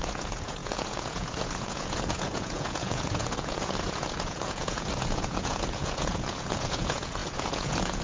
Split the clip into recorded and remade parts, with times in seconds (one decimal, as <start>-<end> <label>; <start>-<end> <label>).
0.0-8.0 remade